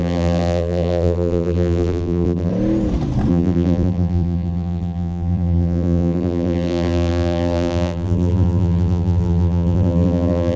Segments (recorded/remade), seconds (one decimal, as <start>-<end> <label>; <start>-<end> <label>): 0.0-2.5 remade; 2.5-3.3 recorded; 3.3-10.6 remade